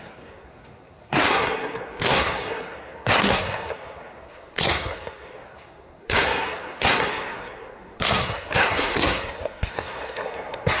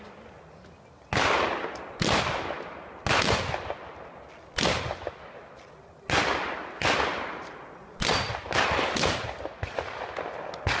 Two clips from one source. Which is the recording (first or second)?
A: second